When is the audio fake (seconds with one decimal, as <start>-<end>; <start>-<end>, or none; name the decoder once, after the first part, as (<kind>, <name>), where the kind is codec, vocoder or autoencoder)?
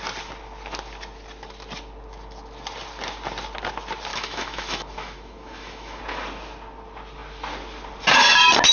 4.1-6.0 (autoencoder, DAC-VAE)